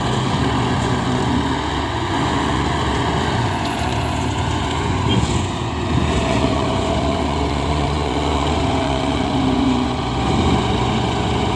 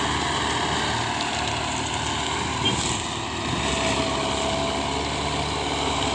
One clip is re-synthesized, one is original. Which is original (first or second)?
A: second